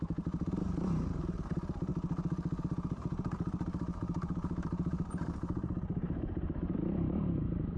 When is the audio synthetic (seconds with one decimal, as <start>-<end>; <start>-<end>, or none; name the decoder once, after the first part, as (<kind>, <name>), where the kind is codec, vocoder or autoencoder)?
0.0-1.9 (vocoder, BigVGAN v2); 2.6-7.8